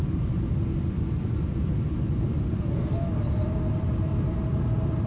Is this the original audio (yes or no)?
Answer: yes